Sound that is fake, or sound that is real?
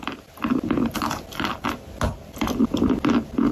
real